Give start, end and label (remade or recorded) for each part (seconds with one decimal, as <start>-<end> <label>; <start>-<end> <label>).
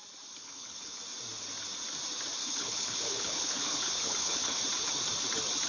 0.0-0.4 recorded; 0.4-1.0 remade; 1.0-2.4 recorded; 2.4-4.6 remade; 4.6-5.7 recorded